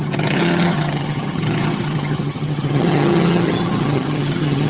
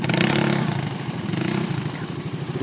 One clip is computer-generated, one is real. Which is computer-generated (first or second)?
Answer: first